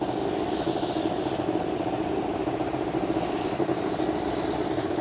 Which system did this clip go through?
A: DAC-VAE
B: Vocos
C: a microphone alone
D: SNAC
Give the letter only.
C